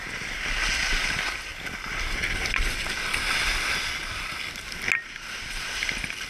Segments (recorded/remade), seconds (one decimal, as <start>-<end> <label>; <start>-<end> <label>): 0.0-6.3 recorded